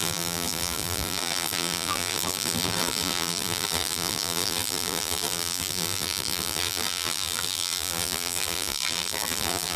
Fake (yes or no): yes